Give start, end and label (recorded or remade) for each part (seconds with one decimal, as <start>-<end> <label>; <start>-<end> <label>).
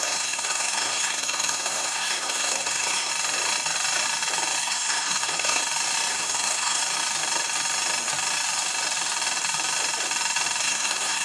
0.0-3.1 remade; 3.1-4.6 recorded; 4.6-5.6 remade; 5.6-6.1 recorded; 6.1-6.8 remade; 6.8-10.6 recorded; 10.6-11.2 remade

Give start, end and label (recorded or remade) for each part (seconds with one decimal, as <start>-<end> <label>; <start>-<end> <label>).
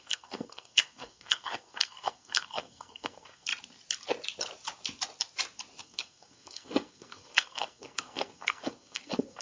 0.0-3.5 remade; 3.5-5.8 recorded; 5.8-9.4 remade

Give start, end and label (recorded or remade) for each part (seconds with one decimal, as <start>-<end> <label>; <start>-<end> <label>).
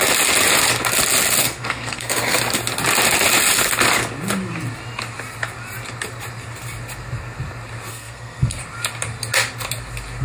0.0-1.4 recorded; 1.4-2.4 remade; 2.4-7.9 recorded; 7.9-8.6 remade; 8.6-10.2 recorded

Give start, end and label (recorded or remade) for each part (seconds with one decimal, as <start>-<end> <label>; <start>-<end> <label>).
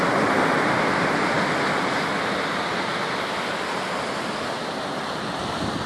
0.0-5.9 recorded